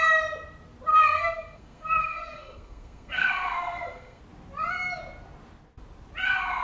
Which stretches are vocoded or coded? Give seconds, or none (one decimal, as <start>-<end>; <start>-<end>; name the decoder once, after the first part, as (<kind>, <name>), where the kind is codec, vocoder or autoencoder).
0.9-4.2 (codec, SNAC)